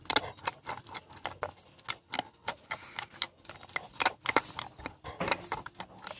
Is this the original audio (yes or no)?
yes